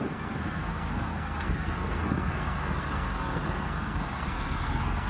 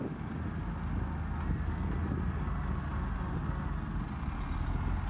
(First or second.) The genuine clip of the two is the second